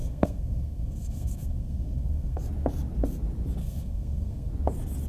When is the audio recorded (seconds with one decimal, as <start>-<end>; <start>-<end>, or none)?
2.4-3.6; 4.5-5.1